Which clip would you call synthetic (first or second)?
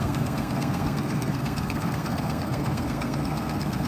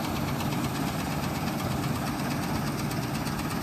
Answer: first